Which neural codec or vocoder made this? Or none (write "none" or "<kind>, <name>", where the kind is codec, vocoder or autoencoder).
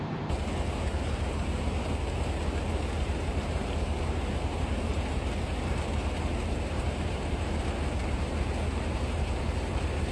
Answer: vocoder, BigVGAN v2